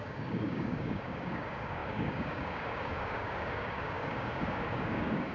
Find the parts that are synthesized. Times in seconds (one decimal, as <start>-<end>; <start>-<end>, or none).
0.0-5.3